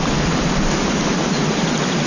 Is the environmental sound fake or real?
real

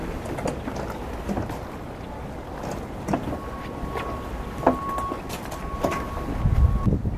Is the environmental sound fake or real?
real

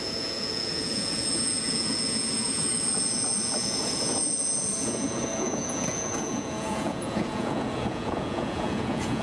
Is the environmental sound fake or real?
fake